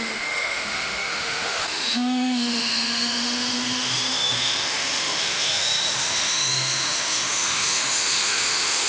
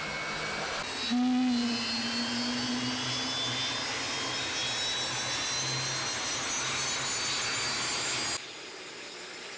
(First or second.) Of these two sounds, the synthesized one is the first